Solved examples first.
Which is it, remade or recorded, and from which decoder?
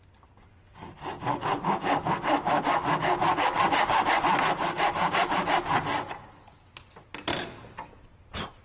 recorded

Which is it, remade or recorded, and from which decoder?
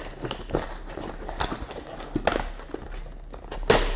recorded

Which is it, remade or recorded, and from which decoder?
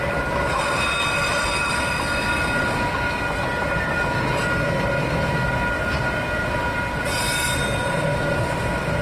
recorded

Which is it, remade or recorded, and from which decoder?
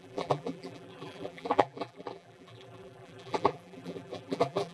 remade, vocoder, BigVGAN v2